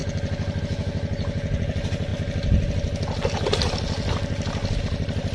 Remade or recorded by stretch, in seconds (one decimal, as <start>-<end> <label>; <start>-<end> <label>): 0.0-2.1 remade; 2.1-4.8 recorded; 4.8-5.3 remade